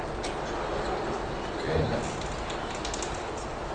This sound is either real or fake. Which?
real